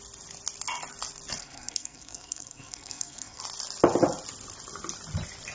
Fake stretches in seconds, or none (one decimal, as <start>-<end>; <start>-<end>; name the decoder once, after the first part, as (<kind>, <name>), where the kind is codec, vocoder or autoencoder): 1.4-3.4 (codec, SNAC)